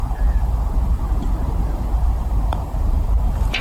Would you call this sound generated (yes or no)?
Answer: yes